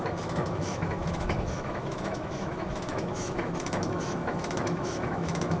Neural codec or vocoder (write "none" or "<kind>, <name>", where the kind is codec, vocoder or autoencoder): autoencoder, DAC-VAE